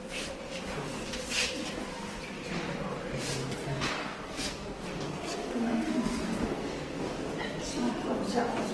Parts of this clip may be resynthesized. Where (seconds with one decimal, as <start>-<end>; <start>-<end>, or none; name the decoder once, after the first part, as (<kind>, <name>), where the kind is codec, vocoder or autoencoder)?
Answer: 3.4-7.1 (codec, SNAC)